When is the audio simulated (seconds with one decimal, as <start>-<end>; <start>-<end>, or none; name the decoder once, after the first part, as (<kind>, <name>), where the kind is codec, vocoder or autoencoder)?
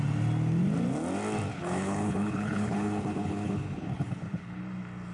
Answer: 1.5-4.6 (codec, HILCodec)